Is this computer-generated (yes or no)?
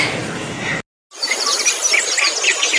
no